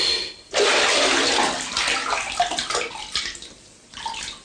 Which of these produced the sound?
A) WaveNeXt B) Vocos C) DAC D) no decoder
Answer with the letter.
D